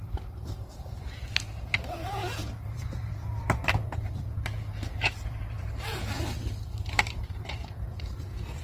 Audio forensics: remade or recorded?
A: remade